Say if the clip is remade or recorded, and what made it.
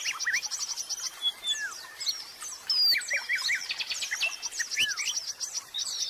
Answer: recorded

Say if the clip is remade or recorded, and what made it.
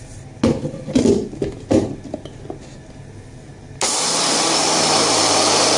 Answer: recorded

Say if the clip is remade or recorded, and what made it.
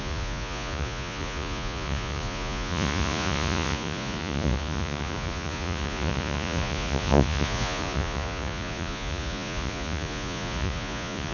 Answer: remade, vocoder, Vocos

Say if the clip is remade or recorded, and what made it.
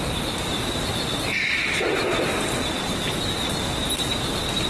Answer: recorded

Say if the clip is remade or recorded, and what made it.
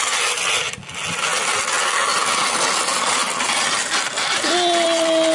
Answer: recorded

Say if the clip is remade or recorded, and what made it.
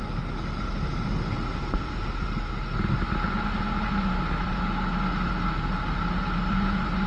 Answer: recorded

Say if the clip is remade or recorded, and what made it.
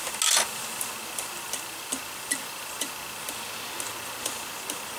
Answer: recorded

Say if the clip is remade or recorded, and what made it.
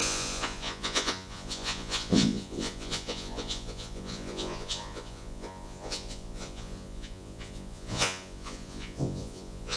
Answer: remade, vocoder, Vocos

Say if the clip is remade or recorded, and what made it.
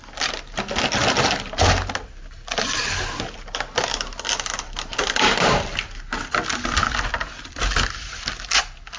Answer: recorded